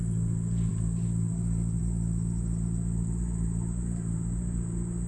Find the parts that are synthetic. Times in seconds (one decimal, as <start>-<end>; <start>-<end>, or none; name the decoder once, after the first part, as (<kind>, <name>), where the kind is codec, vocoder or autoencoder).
none